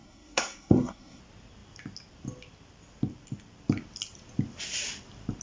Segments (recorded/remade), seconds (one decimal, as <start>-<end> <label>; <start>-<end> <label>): 0.0-1.2 remade; 1.2-5.4 recorded